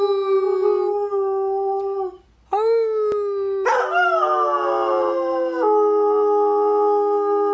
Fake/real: real